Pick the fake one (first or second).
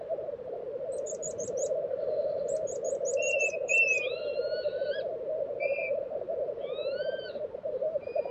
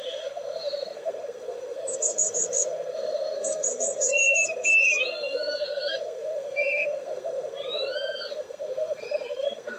second